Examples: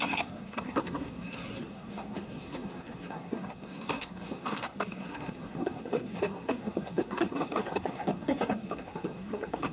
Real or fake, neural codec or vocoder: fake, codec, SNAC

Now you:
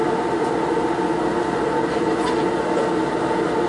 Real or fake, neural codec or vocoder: real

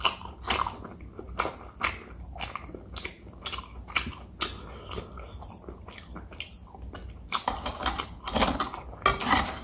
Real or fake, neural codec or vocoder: real